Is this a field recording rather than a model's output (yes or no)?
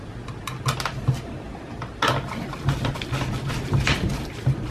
yes